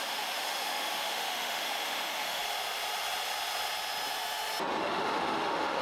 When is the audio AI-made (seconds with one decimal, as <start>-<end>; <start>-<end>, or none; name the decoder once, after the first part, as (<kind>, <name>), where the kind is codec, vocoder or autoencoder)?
0.0-2.4 (autoencoder, DAC-VAE); 4.8-5.8

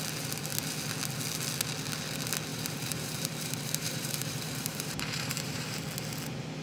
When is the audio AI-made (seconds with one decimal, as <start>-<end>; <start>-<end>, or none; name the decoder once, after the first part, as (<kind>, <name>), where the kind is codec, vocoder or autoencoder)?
2.5-5.8 (vocoder, BigVGAN v2)

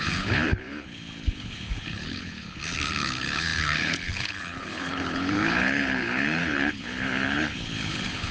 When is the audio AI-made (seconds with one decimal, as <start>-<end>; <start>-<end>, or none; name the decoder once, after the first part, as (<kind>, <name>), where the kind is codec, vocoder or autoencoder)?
0.0-8.3 (codec, HILCodec)